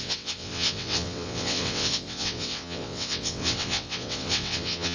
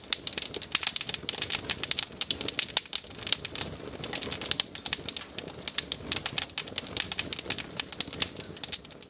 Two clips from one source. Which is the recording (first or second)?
second